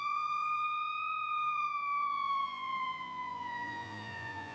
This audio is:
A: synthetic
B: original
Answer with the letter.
A